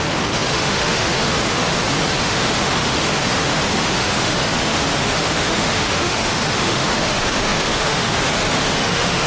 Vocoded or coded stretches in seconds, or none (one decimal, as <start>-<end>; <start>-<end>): 0.0-1.7; 2.2-9.3